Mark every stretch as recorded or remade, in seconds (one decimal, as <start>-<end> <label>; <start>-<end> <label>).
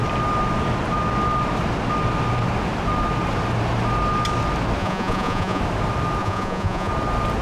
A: 0.0-4.8 recorded; 4.8-5.6 remade; 5.6-6.2 recorded; 6.2-6.9 remade; 6.9-7.4 recorded